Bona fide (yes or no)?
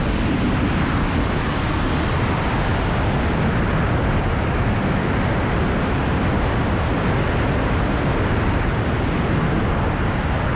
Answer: yes